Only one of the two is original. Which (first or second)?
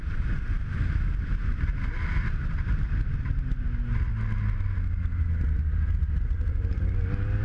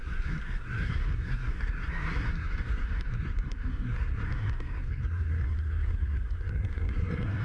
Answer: first